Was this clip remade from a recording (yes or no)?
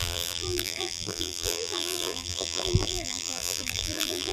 yes